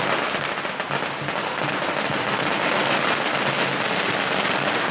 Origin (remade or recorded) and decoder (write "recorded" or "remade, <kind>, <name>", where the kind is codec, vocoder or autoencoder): recorded